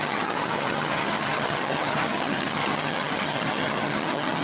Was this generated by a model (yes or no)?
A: yes